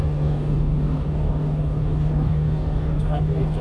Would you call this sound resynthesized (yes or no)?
yes